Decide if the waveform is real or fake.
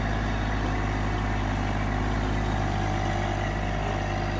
real